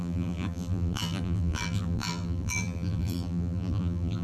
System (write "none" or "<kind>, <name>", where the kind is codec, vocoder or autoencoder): vocoder, BigVGAN v2